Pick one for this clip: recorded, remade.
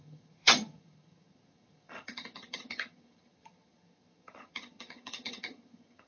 remade